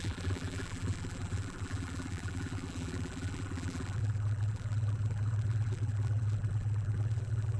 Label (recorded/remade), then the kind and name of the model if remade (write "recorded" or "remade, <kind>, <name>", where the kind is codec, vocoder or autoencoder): remade, vocoder, BigVGAN v2